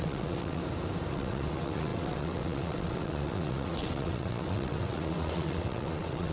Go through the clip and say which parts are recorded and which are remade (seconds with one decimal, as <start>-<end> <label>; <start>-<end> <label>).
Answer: 0.0-0.6 remade; 0.6-1.1 recorded; 1.1-6.3 remade